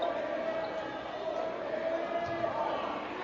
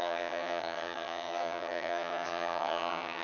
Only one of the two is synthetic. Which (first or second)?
second